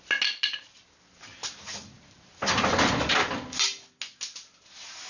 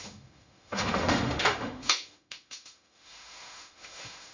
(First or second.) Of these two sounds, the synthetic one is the second